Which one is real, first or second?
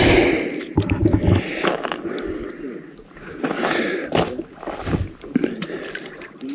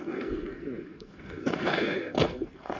first